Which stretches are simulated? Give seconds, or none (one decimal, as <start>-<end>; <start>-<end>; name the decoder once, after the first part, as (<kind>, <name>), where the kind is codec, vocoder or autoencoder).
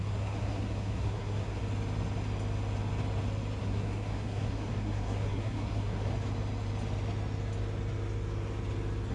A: 0.0-1.6 (codec, SNAC); 3.6-6.1